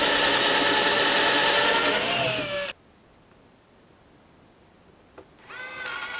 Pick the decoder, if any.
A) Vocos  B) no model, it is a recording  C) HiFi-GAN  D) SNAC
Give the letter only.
B